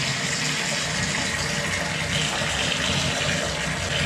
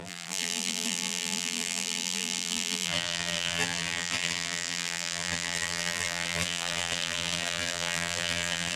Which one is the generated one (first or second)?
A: second